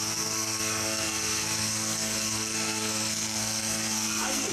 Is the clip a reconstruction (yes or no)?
yes